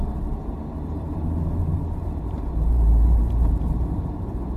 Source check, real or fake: fake